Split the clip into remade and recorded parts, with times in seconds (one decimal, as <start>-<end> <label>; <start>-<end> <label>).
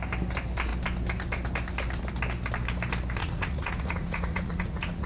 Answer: 0.0-3.2 recorded; 3.2-5.1 remade